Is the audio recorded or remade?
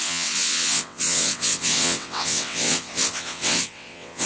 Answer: remade